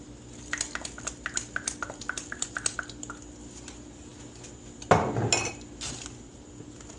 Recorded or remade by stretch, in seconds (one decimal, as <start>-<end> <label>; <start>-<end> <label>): 0.0-7.0 recorded